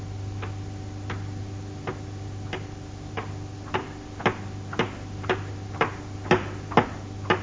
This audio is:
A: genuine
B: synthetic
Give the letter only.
A